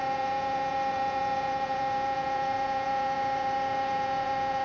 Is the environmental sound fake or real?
fake